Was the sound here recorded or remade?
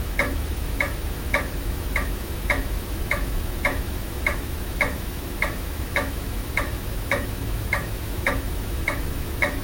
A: remade